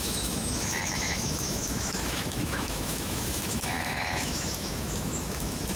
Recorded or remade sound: remade